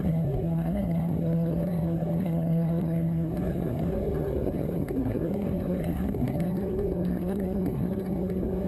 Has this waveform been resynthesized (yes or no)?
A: yes